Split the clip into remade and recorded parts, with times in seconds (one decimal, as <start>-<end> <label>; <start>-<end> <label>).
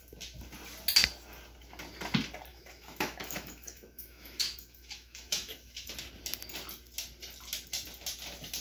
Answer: 0.0-2.5 recorded; 2.5-5.9 remade; 5.9-8.6 recorded